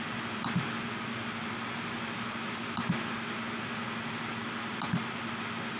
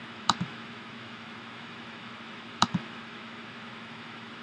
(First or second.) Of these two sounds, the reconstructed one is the second